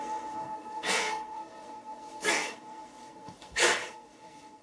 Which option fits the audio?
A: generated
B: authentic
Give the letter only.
A